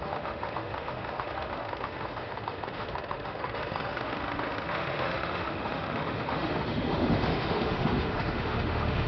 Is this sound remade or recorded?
remade